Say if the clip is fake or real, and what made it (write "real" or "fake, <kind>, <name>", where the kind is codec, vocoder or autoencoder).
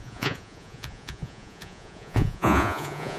fake, vocoder, Vocos